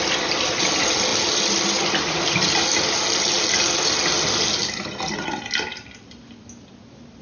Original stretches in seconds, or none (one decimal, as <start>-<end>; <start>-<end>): 0.0-7.2